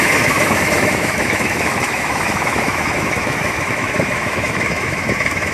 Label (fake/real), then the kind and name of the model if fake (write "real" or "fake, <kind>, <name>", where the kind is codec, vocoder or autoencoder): fake, autoencoder, DAC-VAE